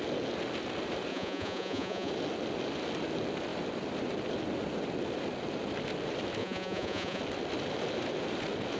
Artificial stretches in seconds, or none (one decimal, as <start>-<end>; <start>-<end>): 1.1-2.1; 6.4-7.2